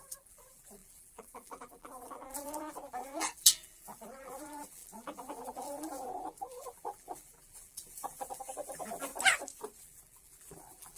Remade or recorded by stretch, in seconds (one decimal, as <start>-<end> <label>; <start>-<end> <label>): 0.0-9.1 remade; 9.1-9.8 recorded; 9.8-11.0 remade